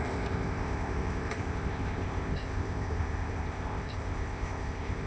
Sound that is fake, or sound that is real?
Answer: fake